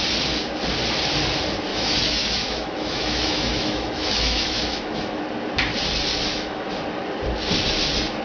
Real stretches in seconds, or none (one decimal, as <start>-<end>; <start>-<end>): 0.0-1.7; 5.2-6.3; 6.8-8.2